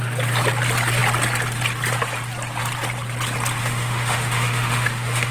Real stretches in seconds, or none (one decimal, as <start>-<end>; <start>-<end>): 0.0-3.6